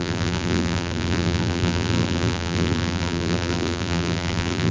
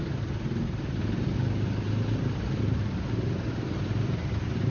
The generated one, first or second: first